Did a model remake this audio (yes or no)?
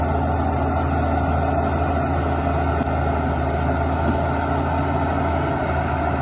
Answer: no